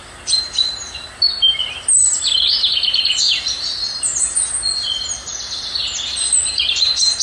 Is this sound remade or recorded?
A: remade